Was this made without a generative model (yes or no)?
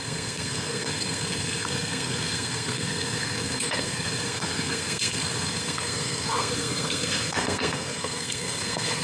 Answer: no